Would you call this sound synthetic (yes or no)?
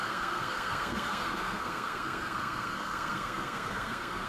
yes